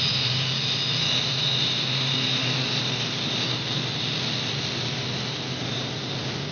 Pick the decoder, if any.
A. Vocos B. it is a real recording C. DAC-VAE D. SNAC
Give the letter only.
B